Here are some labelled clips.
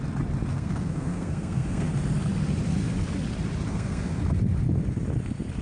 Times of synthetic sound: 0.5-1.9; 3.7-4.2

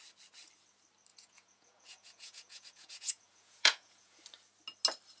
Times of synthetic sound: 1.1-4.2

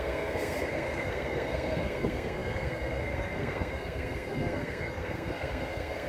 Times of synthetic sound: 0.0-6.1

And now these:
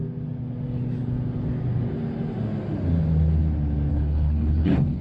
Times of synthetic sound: 3.9-5.0

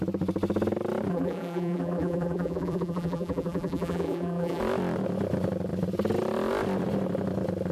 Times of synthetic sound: 1.1-4.6